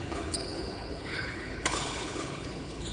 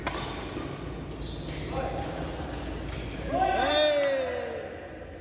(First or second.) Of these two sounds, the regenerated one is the first